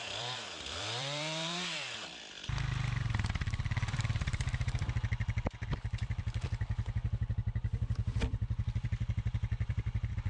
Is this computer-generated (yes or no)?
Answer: yes